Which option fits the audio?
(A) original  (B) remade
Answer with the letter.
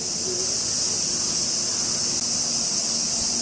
A